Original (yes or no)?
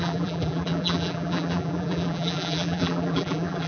no